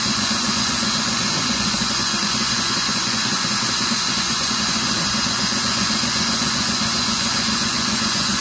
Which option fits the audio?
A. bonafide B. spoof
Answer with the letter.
B